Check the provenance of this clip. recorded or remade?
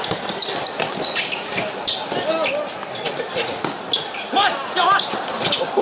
recorded